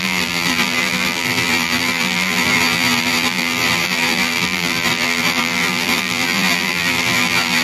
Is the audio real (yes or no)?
no